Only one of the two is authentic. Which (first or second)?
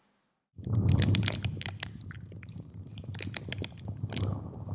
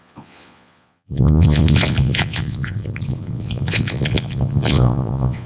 first